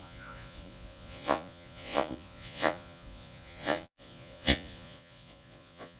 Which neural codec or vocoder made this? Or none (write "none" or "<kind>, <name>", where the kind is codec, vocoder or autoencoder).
vocoder, Vocos